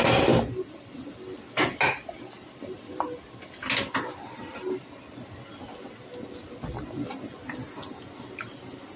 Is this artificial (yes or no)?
no